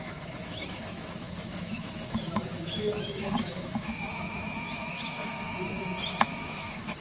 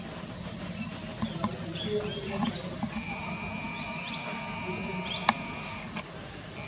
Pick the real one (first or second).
second